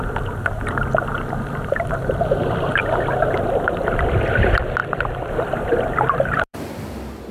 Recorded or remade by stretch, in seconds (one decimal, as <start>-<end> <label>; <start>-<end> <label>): 0.0-2.8 remade; 2.8-3.8 recorded; 3.8-7.3 remade